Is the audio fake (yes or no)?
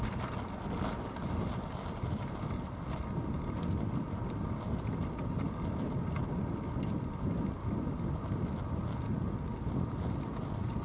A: no